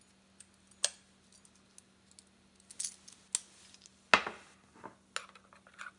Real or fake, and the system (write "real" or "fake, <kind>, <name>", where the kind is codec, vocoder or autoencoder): real